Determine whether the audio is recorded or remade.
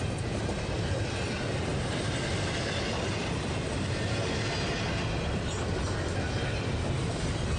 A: recorded